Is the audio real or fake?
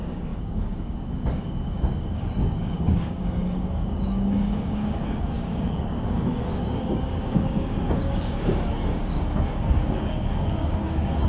fake